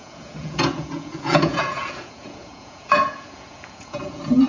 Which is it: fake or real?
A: fake